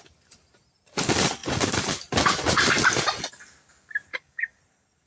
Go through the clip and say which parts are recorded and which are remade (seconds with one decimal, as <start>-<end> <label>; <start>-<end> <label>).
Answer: 0.0-4.1 recorded; 4.1-4.6 remade; 4.6-5.1 recorded